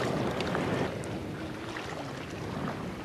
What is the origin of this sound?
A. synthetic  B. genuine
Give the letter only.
B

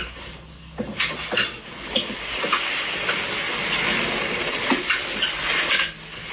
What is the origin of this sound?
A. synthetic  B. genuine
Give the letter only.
B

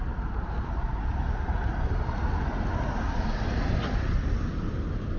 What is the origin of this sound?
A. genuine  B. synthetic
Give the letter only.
A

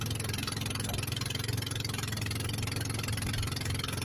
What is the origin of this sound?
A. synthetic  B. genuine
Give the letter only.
B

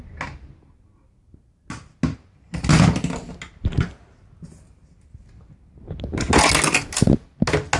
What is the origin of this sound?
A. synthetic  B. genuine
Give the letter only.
B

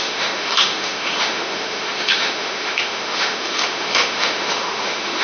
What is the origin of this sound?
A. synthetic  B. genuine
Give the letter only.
A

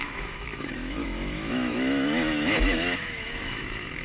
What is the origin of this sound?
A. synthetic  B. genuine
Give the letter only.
A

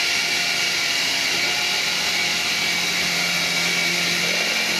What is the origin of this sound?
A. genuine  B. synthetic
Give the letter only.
A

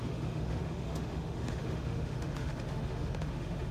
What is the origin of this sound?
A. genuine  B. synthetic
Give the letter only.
B